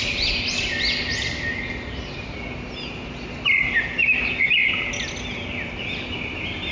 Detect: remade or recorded recorded